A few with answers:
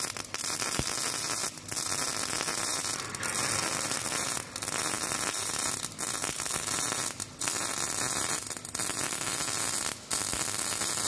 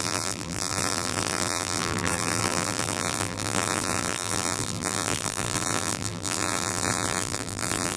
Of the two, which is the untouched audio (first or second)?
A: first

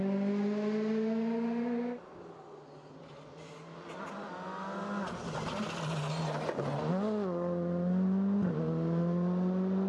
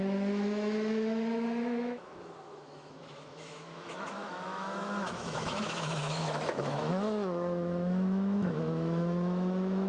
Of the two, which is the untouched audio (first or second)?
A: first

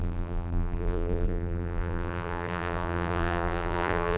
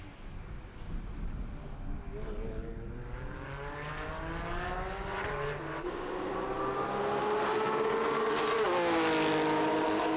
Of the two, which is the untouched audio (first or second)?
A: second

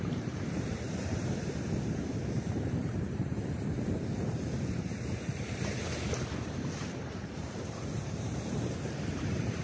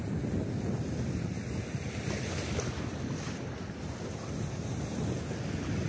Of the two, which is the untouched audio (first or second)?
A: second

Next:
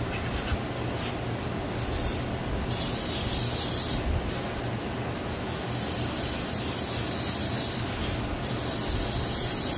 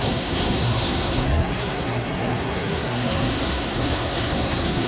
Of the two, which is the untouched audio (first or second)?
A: first